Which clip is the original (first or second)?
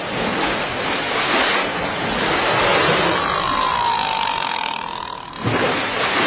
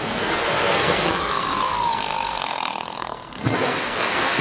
first